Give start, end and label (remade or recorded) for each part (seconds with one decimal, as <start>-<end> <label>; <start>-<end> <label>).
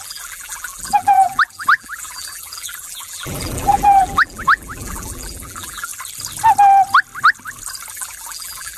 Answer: 0.0-5.9 remade; 5.9-7.9 recorded; 7.9-8.8 remade